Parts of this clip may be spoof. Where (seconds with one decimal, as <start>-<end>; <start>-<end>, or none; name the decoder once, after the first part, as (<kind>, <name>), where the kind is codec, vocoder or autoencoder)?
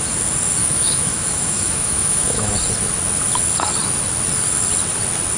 0.6-2.5 (autoencoder, DAC-VAE)